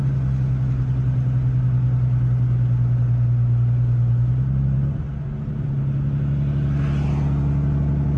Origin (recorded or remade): recorded